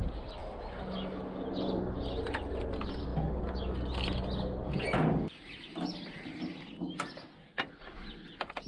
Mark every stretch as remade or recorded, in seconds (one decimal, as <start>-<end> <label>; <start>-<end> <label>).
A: 0.0-8.7 recorded